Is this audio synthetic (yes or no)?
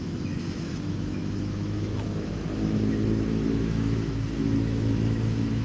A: yes